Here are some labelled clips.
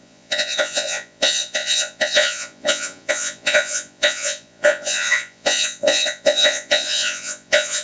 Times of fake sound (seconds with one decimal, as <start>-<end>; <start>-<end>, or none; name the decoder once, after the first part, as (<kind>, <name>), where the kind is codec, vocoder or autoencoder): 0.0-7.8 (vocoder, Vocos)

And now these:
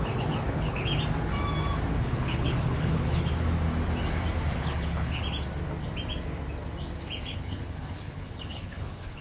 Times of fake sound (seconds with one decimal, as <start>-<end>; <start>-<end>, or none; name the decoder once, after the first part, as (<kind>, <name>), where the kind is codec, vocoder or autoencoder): 0.0-0.9 (codec, HILCodec); 1.9-3.3; 4.5-5.2; 7.3-9.2

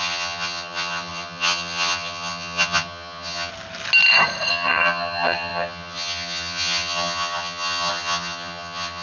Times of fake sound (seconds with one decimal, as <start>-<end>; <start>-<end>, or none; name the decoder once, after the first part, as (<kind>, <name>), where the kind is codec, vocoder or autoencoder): 0.0-3.5 (vocoder, HiFi-GAN); 4.5-9.0